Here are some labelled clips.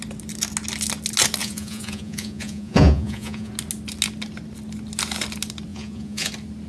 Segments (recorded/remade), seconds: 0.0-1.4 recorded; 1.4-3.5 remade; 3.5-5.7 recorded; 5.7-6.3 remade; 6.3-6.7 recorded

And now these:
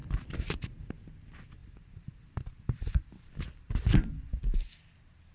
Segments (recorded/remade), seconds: 0.0-1.0 remade; 1.0-1.6 recorded; 1.6-4.8 remade; 4.8-5.3 recorded

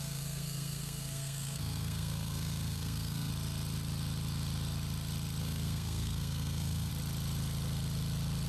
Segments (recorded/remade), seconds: 0.0-3.3 remade; 3.3-5.4 recorded; 5.4-6.9 remade; 6.9-8.5 recorded

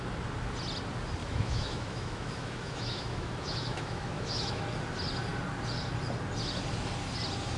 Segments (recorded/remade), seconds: 0.0-1.2 recorded; 1.2-4.6 remade; 4.6-7.6 recorded

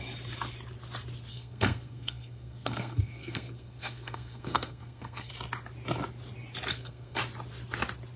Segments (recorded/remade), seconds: 0.0-1.3 recorded; 1.3-5.3 remade; 5.3-6.7 recorded; 6.7-7.2 remade; 7.2-8.2 recorded

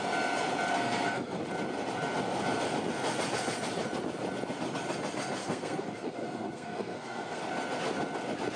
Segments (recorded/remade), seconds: 0.0-0.7 recorded; 0.7-1.4 remade; 1.4-5.4 recorded; 5.4-7.4 remade; 7.4-8.6 recorded

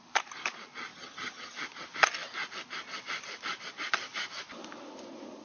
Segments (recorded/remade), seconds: 0.0-0.9 recorded; 0.9-1.6 remade; 1.6-5.4 recorded

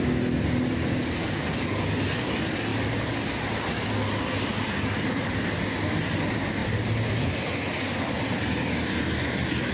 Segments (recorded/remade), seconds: 0.0-9.7 recorded